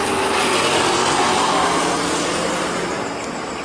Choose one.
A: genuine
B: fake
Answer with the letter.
A